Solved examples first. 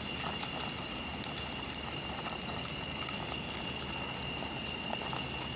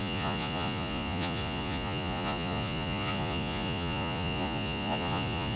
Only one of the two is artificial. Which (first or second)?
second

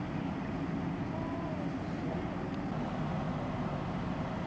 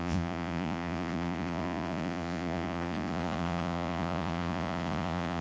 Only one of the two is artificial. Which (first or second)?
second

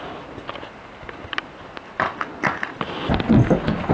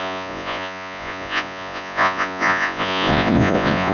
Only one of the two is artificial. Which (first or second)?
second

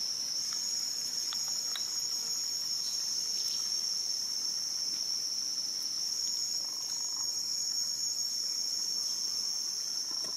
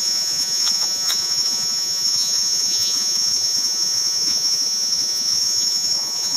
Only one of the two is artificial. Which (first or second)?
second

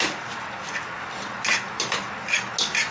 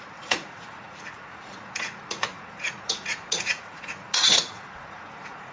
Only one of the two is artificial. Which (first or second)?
second